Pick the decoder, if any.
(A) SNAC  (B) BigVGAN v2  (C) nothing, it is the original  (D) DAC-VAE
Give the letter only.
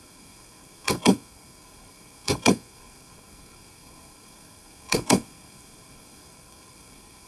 A